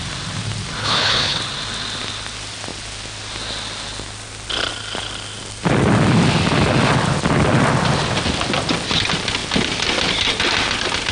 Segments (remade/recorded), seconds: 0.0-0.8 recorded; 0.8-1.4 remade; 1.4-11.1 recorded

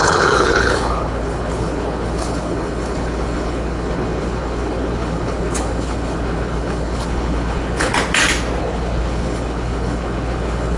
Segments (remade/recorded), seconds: 0.0-7.9 remade; 7.9-8.6 recorded; 8.6-10.8 remade

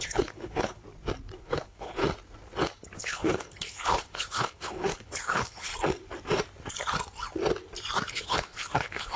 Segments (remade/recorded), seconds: 0.0-0.8 remade; 0.8-1.4 recorded; 1.4-2.0 remade; 2.0-3.0 recorded; 3.0-5.7 remade; 5.7-8.1 recorded; 8.1-9.2 remade

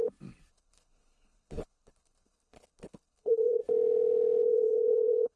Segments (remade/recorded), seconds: 0.0-0.5 recorded; 0.5-3.6 remade; 3.6-4.4 recorded; 4.4-5.4 remade

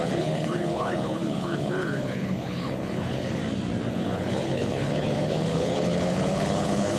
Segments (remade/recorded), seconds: 0.0-3.4 remade; 3.4-3.9 recorded; 3.9-7.0 remade